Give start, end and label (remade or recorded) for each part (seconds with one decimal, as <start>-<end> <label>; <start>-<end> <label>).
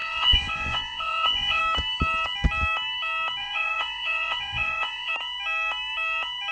0.0-1.6 remade; 1.6-3.4 recorded; 3.4-5.1 remade; 5.1-6.5 recorded